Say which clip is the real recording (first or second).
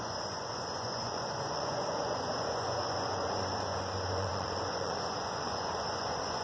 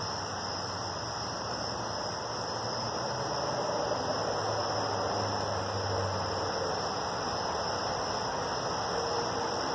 second